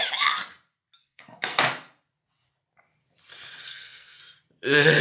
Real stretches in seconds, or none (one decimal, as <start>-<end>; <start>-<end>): 0.0-1.0; 1.6-3.7; 4.2-5.0